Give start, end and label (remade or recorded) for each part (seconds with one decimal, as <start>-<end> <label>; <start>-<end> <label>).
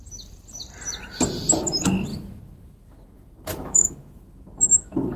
0.0-2.1 recorded; 2.1-5.2 remade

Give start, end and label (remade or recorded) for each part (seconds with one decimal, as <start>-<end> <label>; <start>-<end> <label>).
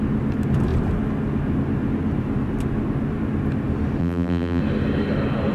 0.0-4.0 recorded; 4.0-4.6 remade; 4.6-5.5 recorded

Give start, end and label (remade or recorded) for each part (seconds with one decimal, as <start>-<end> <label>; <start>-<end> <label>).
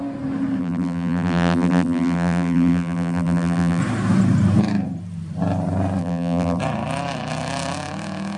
0.0-0.6 recorded; 0.6-3.8 remade; 3.8-6.0 recorded; 6.0-6.6 remade; 6.6-8.4 recorded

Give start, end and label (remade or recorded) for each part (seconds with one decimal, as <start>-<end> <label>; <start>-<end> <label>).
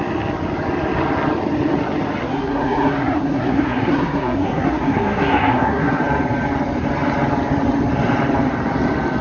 0.0-2.2 recorded; 2.2-6.0 remade; 6.0-9.2 recorded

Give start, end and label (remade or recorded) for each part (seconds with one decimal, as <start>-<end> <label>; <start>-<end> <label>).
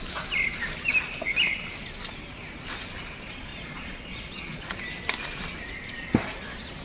0.0-3.5 recorded; 3.5-4.8 remade; 4.8-6.8 recorded